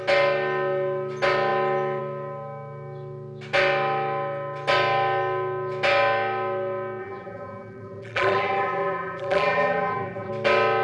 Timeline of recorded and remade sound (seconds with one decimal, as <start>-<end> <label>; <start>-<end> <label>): 0.0-7.0 recorded; 7.0-10.3 remade; 10.3-10.8 recorded